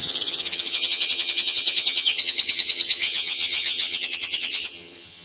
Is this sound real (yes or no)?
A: no